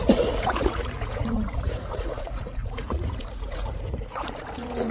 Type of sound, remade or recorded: remade